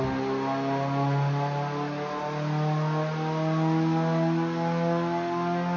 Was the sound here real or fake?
real